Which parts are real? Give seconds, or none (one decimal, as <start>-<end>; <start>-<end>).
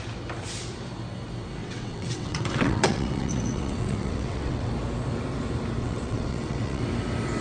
0.0-1.6; 4.7-5.8; 6.8-7.4